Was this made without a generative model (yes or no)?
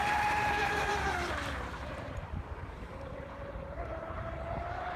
no